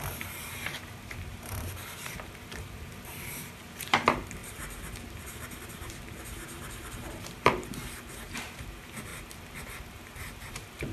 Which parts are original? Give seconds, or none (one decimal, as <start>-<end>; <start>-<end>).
none